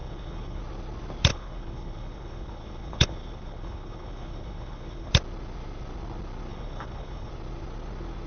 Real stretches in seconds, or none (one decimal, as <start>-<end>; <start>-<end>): 0.6-1.3; 5.1-6.5; 7.3-8.3